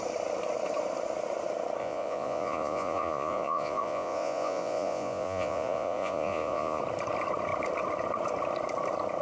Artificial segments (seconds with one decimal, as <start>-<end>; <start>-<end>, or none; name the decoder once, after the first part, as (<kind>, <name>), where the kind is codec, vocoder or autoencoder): 1.8-6.8 (vocoder, Vocos)